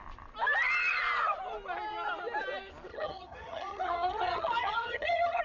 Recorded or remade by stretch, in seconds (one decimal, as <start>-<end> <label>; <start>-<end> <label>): 0.0-2.9 recorded; 2.9-5.4 remade